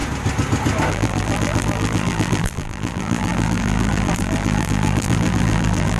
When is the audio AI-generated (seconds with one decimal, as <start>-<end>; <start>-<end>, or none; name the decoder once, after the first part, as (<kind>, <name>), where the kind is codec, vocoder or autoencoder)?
0.9-6.0 (vocoder, BigVGAN v2)